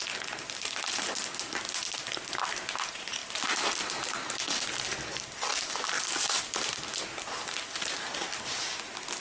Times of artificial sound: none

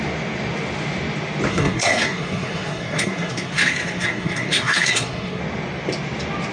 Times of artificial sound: 1.5-5.4 (codec, SNAC)

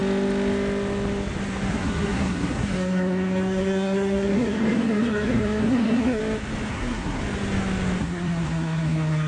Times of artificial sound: 1.7-6.2 (codec, SNAC); 6.7-7.2; 8.0-9.3

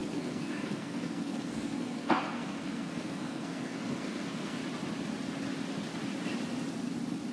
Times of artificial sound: 0.0-4.6 (codec, SNAC)

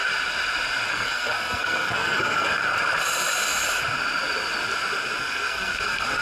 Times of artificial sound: 0.9-2.7 (codec, SNAC); 5.2-6.2

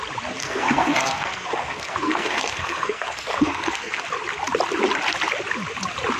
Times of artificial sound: 0.4-4.0 (codec, SNAC)